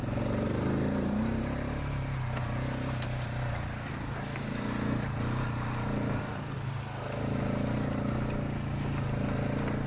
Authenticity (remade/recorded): recorded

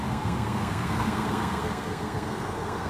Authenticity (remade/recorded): remade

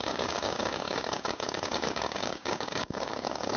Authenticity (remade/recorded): remade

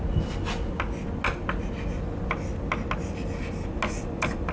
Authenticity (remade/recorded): recorded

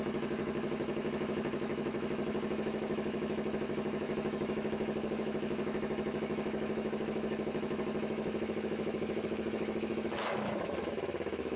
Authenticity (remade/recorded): remade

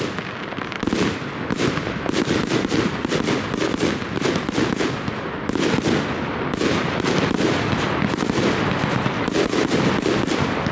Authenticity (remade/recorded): recorded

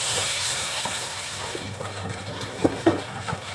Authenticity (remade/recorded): remade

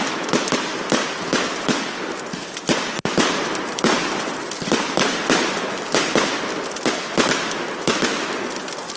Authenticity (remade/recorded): recorded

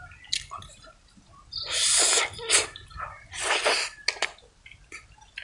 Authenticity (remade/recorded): recorded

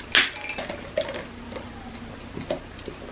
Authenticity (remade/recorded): recorded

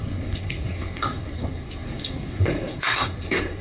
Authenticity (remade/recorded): remade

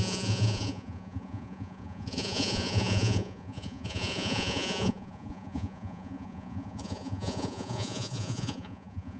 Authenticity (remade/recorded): remade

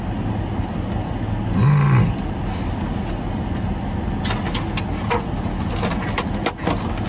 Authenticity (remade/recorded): recorded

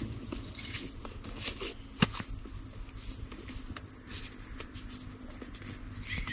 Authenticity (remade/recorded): recorded